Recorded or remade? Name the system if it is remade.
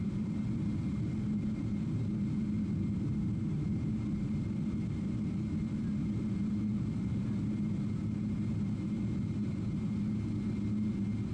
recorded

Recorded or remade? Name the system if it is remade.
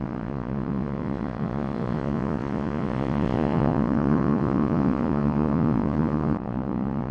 remade, vocoder, Vocos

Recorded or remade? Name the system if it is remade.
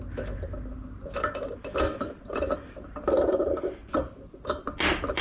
recorded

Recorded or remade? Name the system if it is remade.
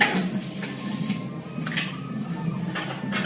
recorded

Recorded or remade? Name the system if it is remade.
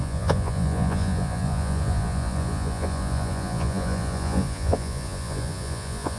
remade, vocoder, Vocos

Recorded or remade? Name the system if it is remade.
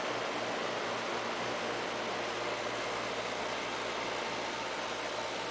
recorded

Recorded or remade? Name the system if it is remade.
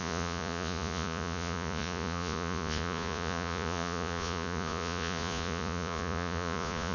remade, vocoder, Vocos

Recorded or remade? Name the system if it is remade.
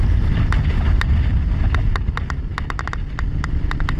recorded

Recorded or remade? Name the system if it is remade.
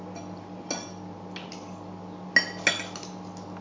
recorded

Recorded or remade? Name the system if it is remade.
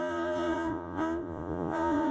remade, vocoder, Vocos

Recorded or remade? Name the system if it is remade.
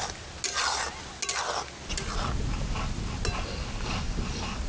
recorded